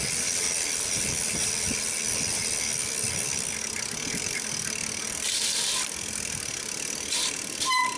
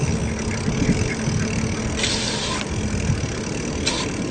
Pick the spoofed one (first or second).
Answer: first